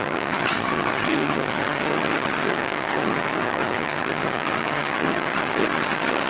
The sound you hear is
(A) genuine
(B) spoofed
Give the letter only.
B